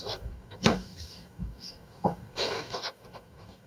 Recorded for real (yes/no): no